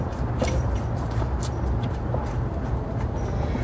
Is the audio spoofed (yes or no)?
yes